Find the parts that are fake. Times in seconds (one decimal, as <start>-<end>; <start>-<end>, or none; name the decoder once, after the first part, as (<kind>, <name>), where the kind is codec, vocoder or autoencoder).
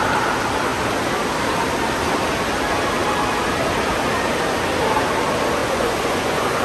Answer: 5.6-6.6 (vocoder, Vocos)